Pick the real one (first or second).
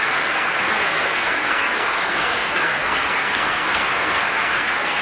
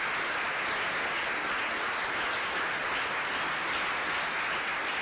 second